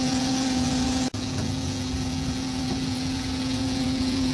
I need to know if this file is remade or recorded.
remade